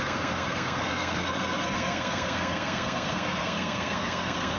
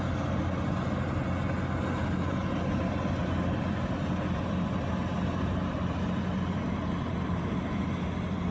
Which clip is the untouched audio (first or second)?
second